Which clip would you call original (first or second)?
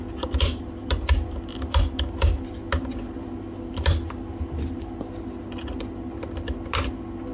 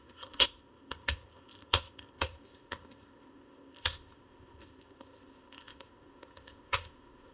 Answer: first